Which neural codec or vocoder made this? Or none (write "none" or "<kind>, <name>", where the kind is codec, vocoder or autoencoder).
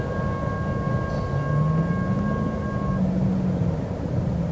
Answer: none